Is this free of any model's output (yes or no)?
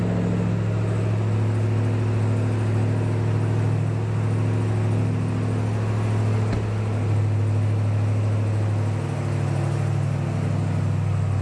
yes